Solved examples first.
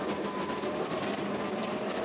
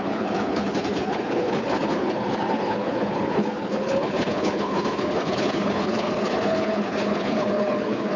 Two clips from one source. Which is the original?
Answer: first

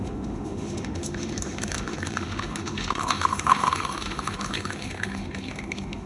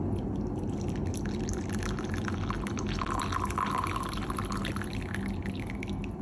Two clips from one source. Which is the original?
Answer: second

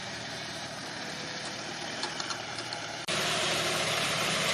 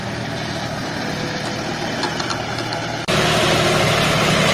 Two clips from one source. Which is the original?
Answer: second